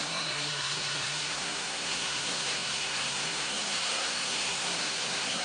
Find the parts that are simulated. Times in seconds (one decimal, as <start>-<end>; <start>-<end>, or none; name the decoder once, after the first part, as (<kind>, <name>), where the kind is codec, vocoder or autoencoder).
0.0-5.4 (codec, SNAC)